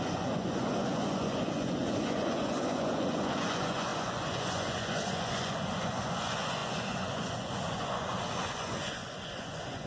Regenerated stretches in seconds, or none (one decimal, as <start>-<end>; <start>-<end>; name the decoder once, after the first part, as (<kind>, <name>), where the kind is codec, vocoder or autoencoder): 0.0-9.9 (vocoder, Vocos)